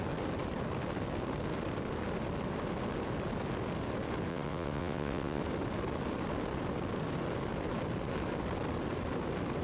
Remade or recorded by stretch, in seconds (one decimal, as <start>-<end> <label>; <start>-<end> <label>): 0.0-4.3 recorded; 4.3-5.4 remade; 5.4-9.6 recorded